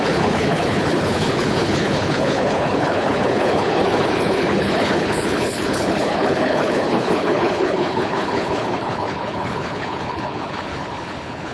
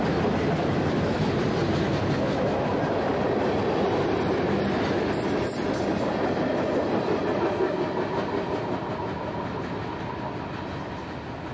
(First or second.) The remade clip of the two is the first